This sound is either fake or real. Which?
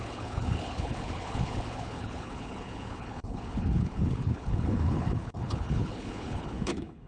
fake